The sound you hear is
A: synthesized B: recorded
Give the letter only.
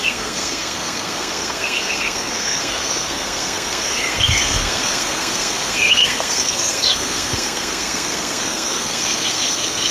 A